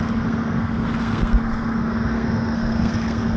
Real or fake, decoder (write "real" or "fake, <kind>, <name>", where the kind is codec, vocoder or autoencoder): fake, codec, SNAC